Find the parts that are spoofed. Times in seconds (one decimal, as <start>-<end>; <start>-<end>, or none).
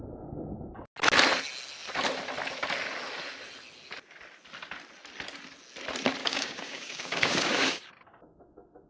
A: 6.2-7.9